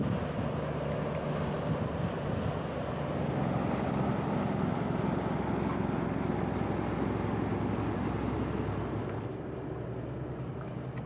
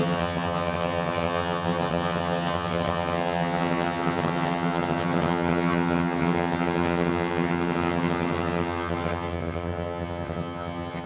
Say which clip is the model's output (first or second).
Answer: second